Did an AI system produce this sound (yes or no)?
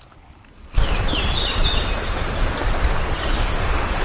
yes